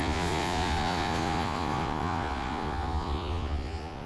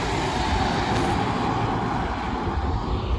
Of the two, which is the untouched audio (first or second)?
second